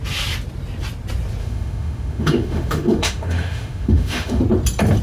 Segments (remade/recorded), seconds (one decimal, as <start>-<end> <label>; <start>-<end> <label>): 0.0-1.4 recorded; 1.4-4.4 remade; 4.4-5.0 recorded